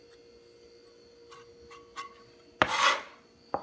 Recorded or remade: recorded